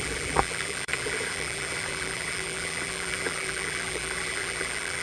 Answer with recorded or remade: remade